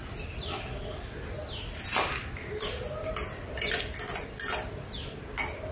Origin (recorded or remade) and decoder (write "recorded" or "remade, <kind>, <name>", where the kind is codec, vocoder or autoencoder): recorded